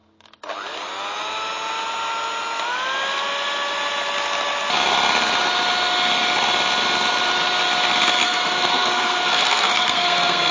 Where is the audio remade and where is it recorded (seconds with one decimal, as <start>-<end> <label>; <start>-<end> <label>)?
0.0-8.2 recorded; 8.2-10.5 remade